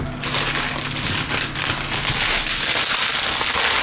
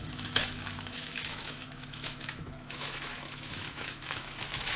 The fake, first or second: second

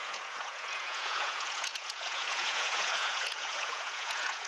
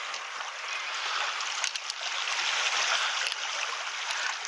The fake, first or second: first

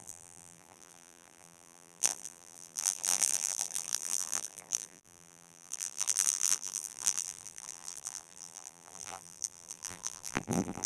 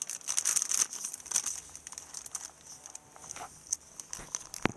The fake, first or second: first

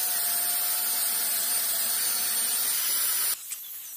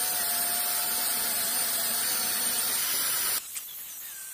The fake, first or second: second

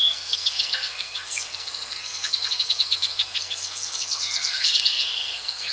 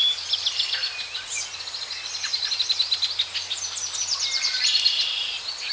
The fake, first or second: first